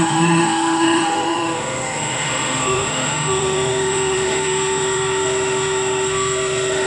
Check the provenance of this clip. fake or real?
fake